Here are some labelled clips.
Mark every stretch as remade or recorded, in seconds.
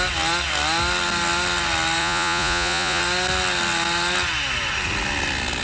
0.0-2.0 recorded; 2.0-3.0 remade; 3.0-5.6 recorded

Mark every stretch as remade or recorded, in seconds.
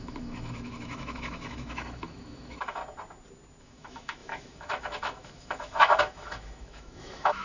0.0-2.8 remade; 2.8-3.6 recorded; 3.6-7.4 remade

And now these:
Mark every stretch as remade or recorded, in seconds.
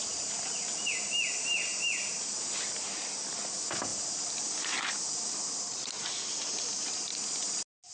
0.0-7.9 recorded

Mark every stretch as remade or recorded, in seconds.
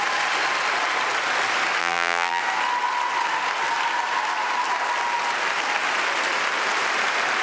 0.0-1.8 recorded; 1.8-2.4 remade; 2.4-7.4 recorded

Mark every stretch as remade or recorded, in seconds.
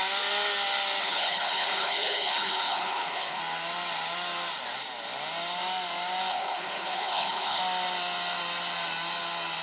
0.0-1.0 recorded; 1.0-3.4 remade; 3.4-6.3 recorded; 6.3-7.6 remade; 7.6-9.6 recorded